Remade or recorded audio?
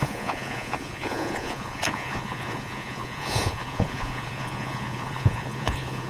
remade